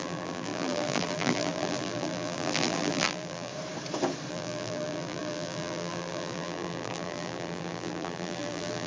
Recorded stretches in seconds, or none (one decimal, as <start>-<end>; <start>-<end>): 3.5-4.3